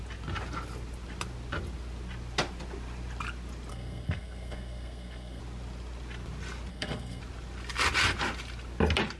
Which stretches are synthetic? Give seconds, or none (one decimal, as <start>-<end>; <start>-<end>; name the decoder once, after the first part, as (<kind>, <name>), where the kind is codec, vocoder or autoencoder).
3.7-5.4 (codec, SNAC); 6.7-7.2